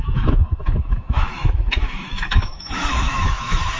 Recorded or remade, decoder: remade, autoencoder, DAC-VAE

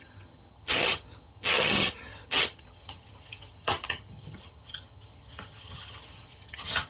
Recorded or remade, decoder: remade, vocoder, HiFi-GAN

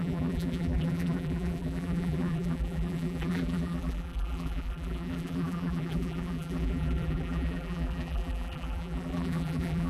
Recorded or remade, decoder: remade, vocoder, BigVGAN v2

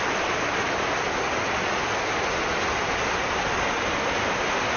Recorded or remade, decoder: recorded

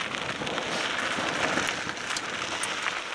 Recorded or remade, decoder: recorded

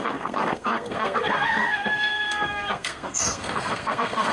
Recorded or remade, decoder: remade, codec, SNAC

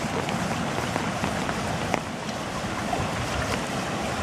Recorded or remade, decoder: recorded